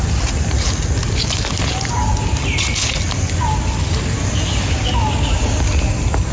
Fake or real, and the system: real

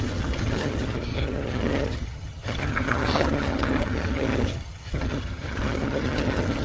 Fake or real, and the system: fake, vocoder, HiFi-GAN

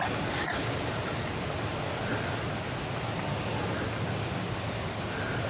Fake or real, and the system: real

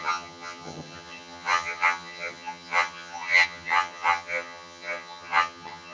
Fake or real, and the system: fake, vocoder, HiFi-GAN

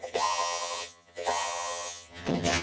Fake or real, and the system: fake, vocoder, HiFi-GAN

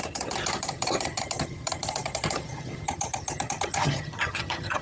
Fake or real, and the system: fake, vocoder, HiFi-GAN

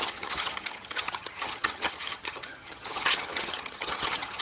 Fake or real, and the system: fake, vocoder, HiFi-GAN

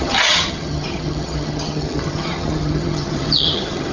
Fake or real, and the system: fake, vocoder, HiFi-GAN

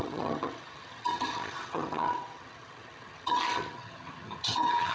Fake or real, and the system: fake, vocoder, HiFi-GAN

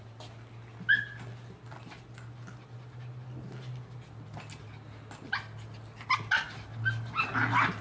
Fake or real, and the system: real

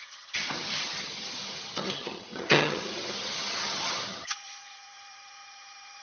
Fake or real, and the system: fake, vocoder, HiFi-GAN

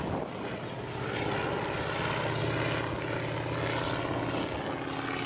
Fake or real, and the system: real